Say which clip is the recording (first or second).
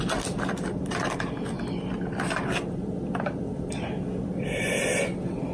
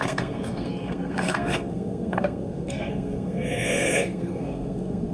first